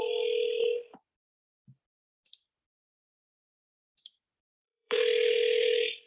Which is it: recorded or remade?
remade